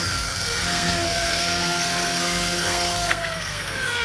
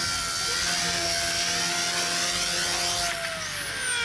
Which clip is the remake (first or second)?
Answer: first